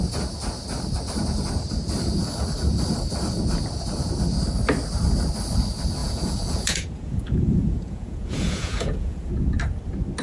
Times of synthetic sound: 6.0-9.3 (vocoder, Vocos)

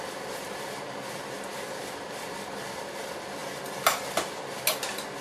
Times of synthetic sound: none

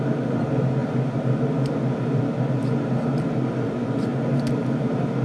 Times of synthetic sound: 0.0-5.2 (vocoder, BigVGAN v2)